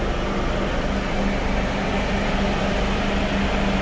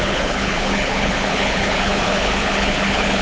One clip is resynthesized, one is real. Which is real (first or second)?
first